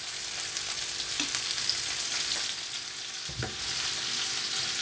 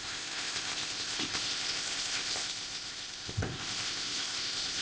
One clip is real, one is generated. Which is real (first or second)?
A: first